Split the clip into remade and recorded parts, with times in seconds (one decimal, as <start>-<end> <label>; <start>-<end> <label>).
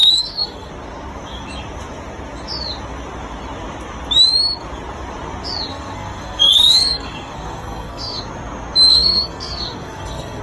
0.0-0.7 remade; 0.7-5.7 recorded; 5.7-8.2 remade; 8.2-8.9 recorded; 8.9-10.4 remade